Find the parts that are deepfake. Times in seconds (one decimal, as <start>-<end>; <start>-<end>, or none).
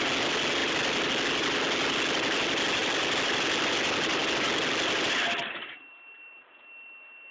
none